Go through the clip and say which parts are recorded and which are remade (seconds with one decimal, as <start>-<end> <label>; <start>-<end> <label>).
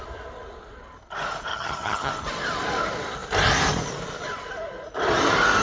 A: 0.0-1.5 recorded; 1.5-2.1 remade; 2.1-5.6 recorded